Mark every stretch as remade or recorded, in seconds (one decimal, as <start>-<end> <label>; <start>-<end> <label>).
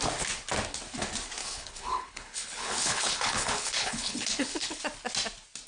0.0-1.4 recorded; 1.4-4.8 remade; 4.8-5.7 recorded